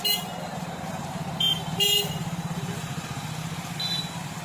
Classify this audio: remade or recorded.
remade